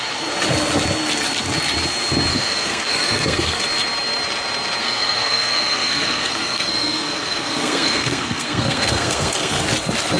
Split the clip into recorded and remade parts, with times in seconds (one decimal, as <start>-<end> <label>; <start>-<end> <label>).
0.0-2.3 recorded; 2.3-3.6 remade; 3.6-4.8 recorded; 4.8-9.6 remade; 9.6-10.2 recorded